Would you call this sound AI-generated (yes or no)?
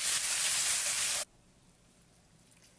yes